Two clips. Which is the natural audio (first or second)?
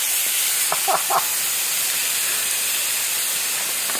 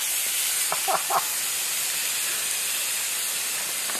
second